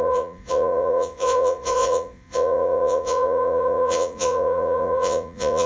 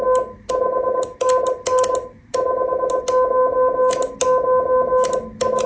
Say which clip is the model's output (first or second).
first